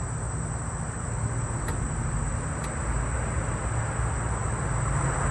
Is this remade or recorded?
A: recorded